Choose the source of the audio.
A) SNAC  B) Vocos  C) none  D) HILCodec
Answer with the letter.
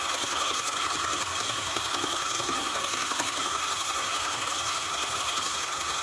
A